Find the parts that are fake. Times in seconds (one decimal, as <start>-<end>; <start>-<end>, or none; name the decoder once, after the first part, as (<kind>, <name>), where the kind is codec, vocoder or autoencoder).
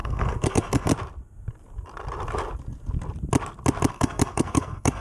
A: 0.0-0.9 (codec, SNAC); 3.9-5.0